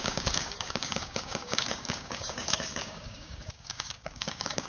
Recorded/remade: remade